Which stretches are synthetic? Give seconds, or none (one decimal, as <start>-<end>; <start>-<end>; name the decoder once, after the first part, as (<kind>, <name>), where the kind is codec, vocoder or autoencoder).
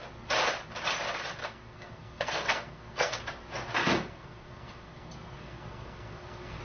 1.4-3.2 (codec, SNAC); 3.8-6.6